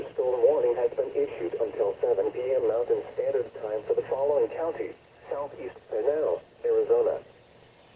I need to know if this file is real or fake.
real